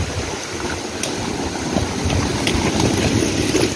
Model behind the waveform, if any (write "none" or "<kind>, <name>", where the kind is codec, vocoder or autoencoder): none